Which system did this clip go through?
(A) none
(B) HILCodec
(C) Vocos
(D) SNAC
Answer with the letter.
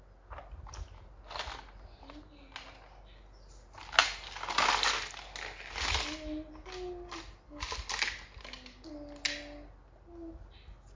A